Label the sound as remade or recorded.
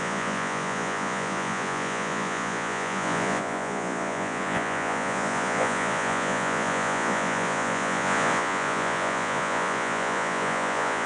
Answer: remade